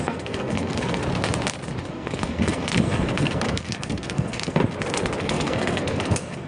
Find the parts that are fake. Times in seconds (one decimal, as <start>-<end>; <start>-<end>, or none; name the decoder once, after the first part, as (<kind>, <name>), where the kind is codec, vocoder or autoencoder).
0.0-1.0 (codec, SNAC); 1.8-4.6; 5.2-6.5